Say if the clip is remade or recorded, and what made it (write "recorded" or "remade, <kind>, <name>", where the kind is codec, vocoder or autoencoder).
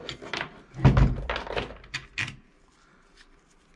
recorded